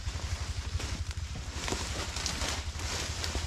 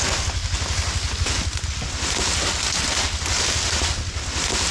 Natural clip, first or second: second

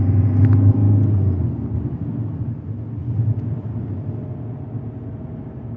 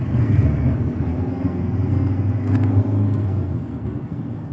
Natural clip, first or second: first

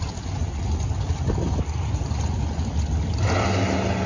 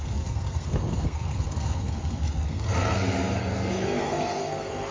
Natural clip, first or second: first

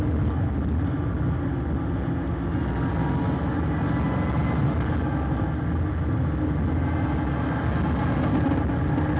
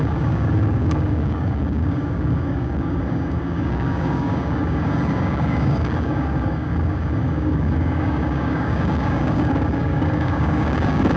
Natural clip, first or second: first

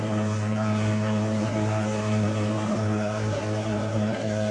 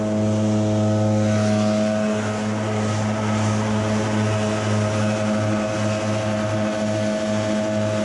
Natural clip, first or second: second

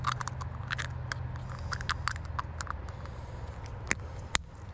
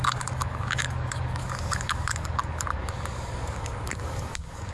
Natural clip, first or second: first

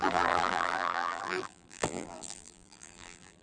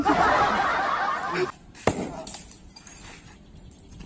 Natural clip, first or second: second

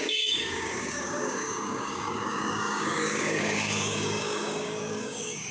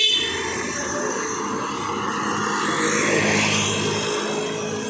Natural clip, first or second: second